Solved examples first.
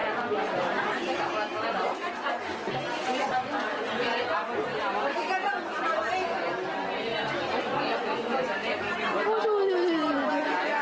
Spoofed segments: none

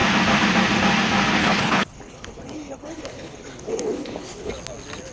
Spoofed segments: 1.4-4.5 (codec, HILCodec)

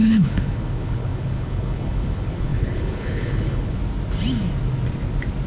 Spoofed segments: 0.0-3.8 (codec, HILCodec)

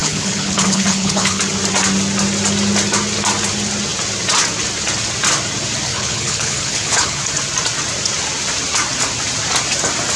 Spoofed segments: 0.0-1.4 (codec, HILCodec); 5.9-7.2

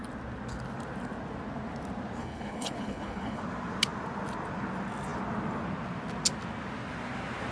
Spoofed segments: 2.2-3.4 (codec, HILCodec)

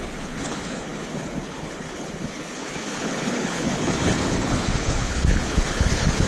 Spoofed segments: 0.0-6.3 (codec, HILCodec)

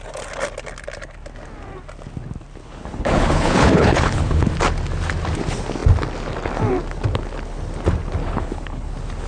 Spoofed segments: 2.6-4.5 (codec, HILCodec); 8.2-8.9

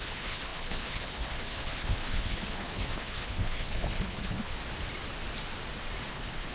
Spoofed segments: 0.0-4.6 (codec, HILCodec); 6.1-6.5